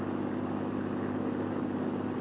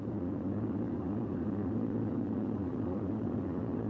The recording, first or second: first